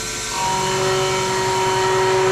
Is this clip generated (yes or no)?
no